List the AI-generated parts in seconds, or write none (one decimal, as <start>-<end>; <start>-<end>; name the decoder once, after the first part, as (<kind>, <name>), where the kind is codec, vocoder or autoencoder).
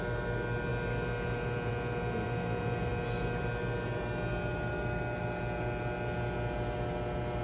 none